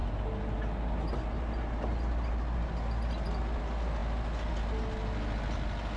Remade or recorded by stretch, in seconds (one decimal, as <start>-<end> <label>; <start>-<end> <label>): 0.0-6.0 recorded